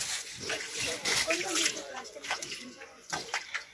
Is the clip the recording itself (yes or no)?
no